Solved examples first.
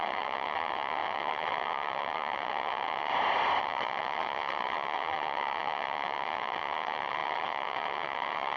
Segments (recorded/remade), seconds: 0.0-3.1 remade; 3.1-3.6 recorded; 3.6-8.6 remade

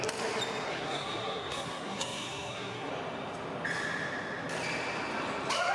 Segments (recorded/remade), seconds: 0.0-0.7 recorded; 0.7-2.9 remade; 2.9-5.7 recorded

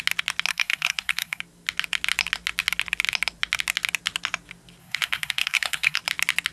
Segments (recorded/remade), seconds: 0.0-0.5 recorded; 0.5-1.4 remade; 1.4-4.8 recorded; 4.8-6.0 remade; 6.0-6.5 recorded

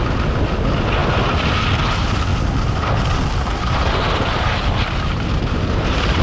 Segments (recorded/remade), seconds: 0.0-2.3 recorded; 2.3-6.2 remade

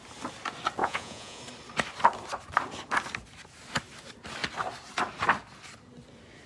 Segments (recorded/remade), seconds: 0.0-0.8 recorded; 0.8-1.4 remade; 1.4-6.5 recorded